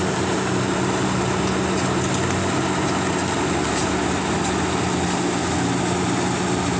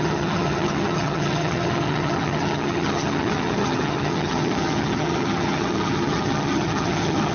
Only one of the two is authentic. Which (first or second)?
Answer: first